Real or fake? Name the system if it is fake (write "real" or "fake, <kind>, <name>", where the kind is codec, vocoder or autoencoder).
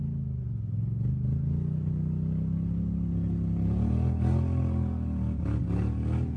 real